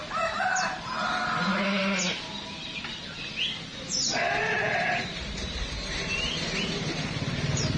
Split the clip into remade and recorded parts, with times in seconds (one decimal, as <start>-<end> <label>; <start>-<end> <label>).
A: 0.0-1.2 remade; 1.2-3.7 recorded; 3.7-7.8 remade